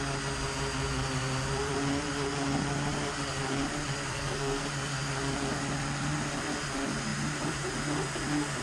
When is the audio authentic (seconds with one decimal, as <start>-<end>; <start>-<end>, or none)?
0.0-4.1; 4.6-8.6